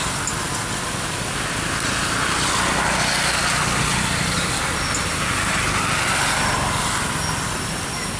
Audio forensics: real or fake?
real